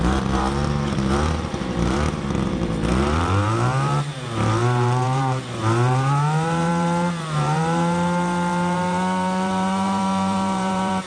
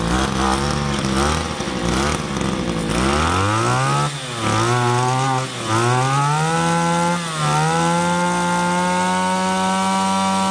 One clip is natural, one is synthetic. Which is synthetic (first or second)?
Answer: first